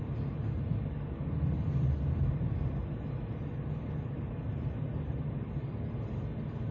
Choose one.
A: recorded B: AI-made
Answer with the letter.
A